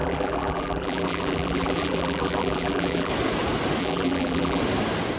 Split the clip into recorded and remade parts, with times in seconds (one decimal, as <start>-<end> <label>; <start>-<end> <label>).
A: 0.0-3.1 remade; 3.1-3.8 recorded; 3.8-4.6 remade; 4.6-5.2 recorded